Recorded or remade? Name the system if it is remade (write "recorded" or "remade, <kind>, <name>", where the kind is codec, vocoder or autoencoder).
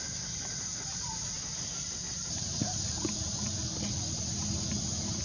recorded